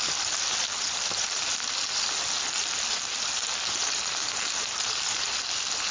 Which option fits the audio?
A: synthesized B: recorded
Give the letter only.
B